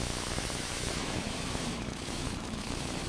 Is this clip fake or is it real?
fake